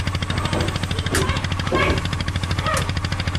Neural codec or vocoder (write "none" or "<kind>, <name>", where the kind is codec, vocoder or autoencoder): none